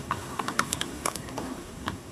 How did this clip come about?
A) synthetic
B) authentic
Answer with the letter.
A